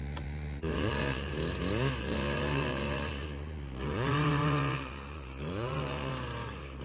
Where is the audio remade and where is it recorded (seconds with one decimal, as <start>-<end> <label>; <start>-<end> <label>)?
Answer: 0.0-1.3 remade; 1.3-2.0 recorded; 2.0-6.1 remade; 6.1-6.8 recorded